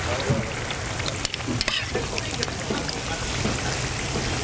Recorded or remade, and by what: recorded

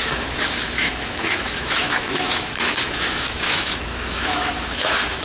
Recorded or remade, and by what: remade, autoencoder, DAC-VAE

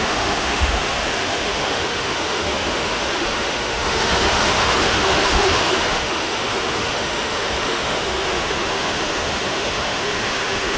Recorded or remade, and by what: remade, autoencoder, DAC-VAE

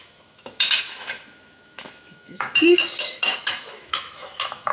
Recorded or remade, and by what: remade, autoencoder, DAC-VAE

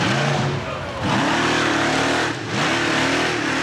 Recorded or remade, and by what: recorded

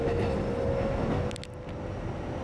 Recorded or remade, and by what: recorded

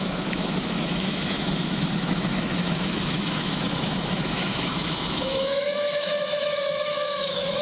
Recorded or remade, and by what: remade, autoencoder, DAC-VAE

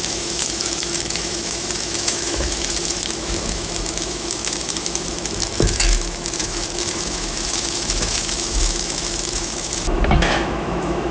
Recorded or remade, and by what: remade, autoencoder, DAC-VAE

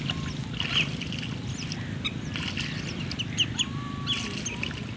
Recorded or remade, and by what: recorded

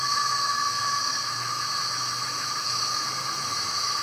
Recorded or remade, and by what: remade, autoencoder, DAC-VAE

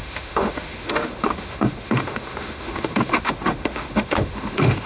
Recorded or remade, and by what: remade, autoencoder, DAC-VAE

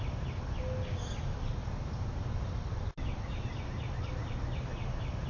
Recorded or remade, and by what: recorded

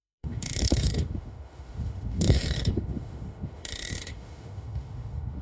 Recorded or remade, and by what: remade, autoencoder, DAC-VAE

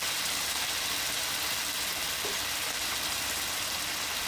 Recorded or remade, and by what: recorded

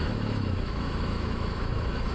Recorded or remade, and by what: remade, autoencoder, DAC-VAE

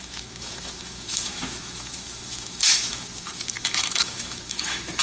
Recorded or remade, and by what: remade, autoencoder, DAC-VAE